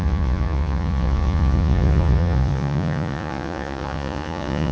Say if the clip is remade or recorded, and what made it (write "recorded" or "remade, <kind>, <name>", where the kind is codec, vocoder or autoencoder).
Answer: remade, vocoder, Vocos